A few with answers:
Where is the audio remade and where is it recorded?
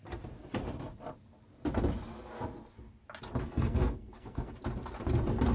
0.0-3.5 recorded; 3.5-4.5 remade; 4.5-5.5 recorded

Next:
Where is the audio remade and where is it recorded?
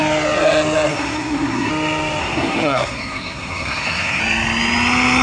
0.0-0.9 recorded; 0.9-1.7 remade; 1.7-2.2 recorded; 2.2-4.2 remade; 4.2-5.2 recorded